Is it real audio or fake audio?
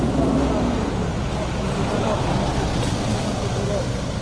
real